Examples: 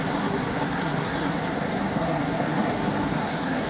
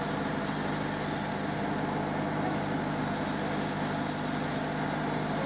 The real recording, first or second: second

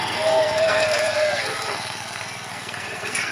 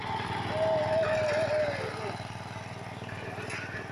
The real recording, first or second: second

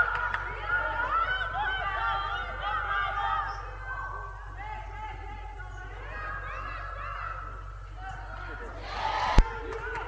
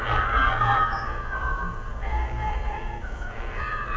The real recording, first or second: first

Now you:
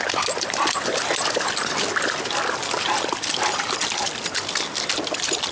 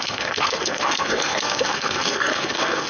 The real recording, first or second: first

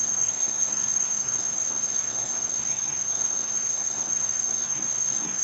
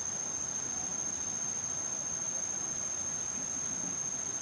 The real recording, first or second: second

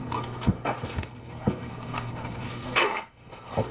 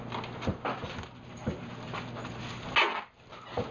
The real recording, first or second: second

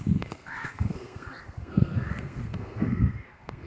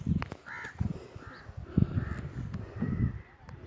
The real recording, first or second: second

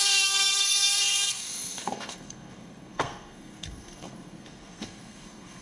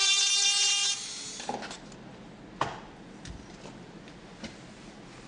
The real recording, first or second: second